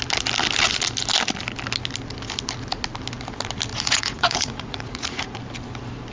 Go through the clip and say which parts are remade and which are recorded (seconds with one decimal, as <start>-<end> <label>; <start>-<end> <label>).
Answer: 0.0-3.7 recorded; 3.7-5.4 remade; 5.4-6.1 recorded